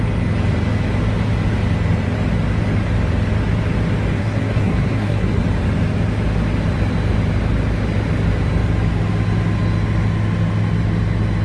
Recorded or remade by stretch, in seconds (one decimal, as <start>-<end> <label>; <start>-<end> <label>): 0.0-4.2 recorded; 4.2-5.4 remade; 5.4-11.4 recorded